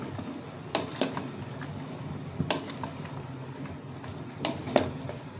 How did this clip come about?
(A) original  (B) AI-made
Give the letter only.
A